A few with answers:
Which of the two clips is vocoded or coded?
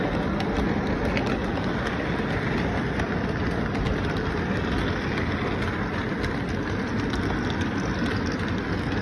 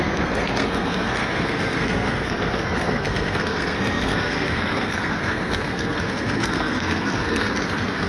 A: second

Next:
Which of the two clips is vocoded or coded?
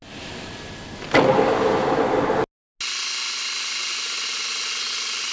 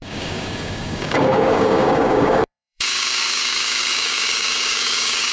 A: second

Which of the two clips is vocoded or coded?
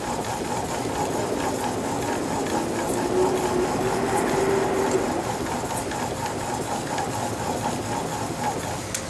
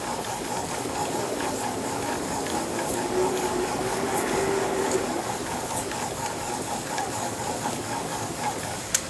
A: second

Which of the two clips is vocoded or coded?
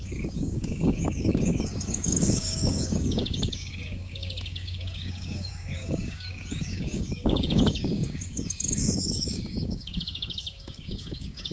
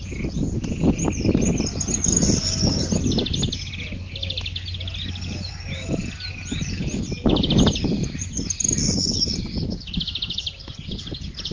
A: first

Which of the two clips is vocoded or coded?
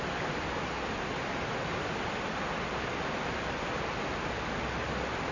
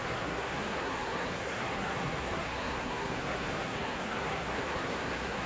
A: second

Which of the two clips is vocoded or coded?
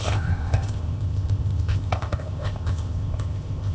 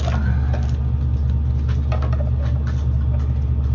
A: first